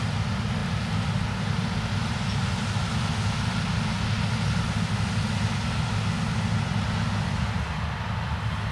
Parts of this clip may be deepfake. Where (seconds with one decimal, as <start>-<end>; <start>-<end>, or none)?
none